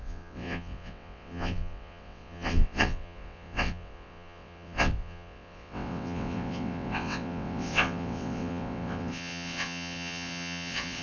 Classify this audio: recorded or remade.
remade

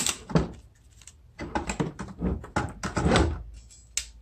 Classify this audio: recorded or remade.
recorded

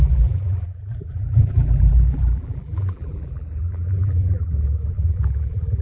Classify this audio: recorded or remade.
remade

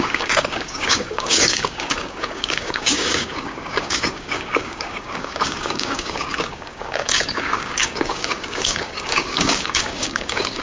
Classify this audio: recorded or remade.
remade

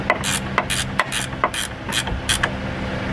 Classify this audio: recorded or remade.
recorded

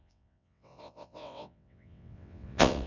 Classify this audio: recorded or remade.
remade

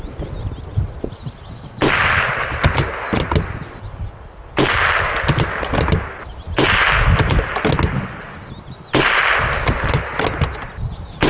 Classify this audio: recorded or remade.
recorded